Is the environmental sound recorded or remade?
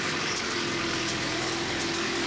remade